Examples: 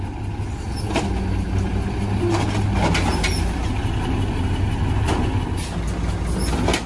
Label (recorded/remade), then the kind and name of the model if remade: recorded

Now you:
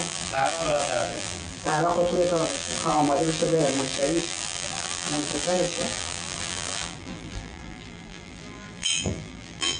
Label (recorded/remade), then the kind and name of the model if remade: remade, vocoder, BigVGAN v2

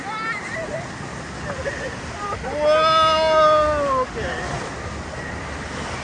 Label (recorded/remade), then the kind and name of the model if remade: recorded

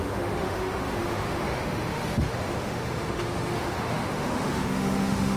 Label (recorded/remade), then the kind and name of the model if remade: remade, autoencoder, DAC-VAE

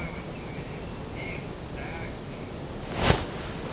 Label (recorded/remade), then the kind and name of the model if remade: recorded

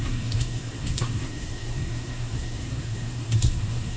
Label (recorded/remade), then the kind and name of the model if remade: remade, codec, SNAC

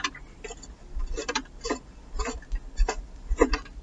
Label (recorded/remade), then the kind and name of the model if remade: recorded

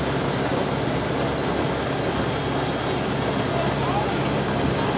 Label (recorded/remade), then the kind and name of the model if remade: recorded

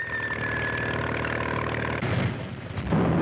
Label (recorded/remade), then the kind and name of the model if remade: recorded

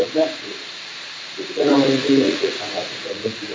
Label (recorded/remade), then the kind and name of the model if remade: remade, vocoder, Vocos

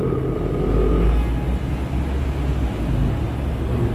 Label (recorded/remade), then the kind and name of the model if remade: recorded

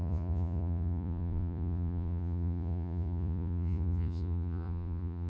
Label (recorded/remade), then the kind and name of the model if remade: remade, vocoder, Vocos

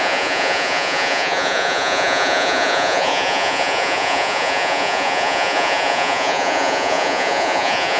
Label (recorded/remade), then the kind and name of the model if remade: remade, vocoder, Vocos